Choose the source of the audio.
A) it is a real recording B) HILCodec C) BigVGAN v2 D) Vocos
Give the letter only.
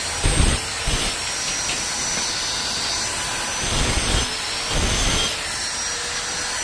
A